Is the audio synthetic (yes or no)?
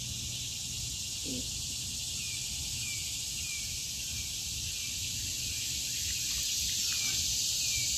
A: no